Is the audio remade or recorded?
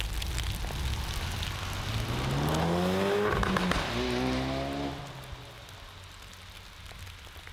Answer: recorded